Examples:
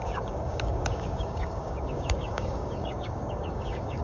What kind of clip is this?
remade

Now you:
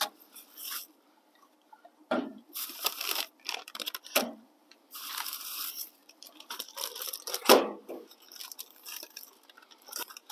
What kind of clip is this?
remade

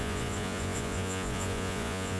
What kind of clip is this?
remade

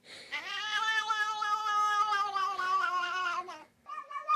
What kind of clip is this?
remade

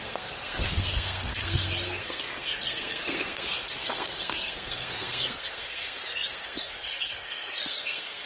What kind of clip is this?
remade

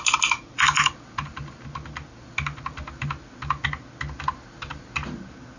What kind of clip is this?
recorded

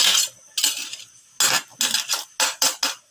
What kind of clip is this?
recorded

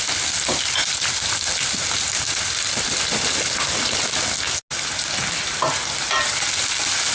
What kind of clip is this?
recorded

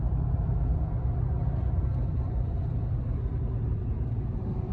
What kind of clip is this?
recorded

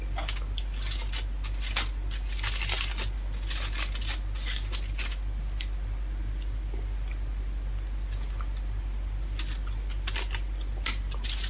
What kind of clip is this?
recorded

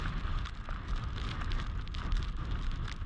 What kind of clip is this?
recorded